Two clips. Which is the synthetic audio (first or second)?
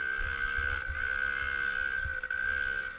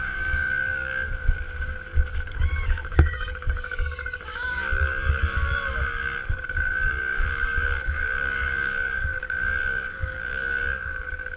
second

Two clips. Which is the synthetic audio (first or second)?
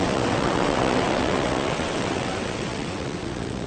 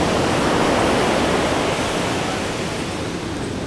first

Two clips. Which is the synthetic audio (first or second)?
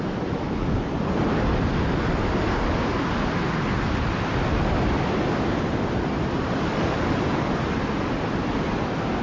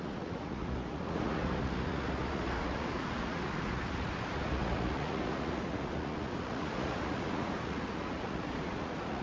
second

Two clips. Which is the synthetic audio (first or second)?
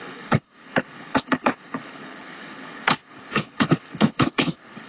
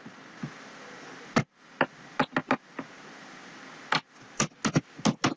first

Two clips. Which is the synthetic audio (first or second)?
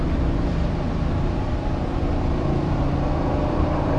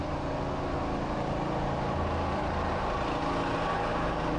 first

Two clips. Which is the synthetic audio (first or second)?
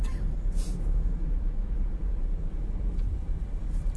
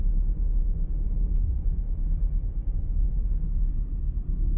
first